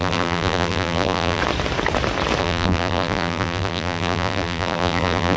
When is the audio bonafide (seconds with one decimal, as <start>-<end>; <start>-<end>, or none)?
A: 1.4-2.4